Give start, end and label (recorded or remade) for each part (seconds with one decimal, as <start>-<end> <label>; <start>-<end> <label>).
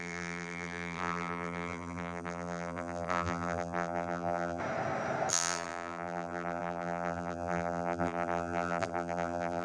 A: 0.0-4.6 remade; 4.6-5.3 recorded; 5.3-9.6 remade